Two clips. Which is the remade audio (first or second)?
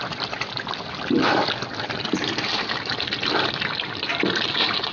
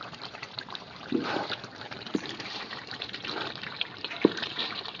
second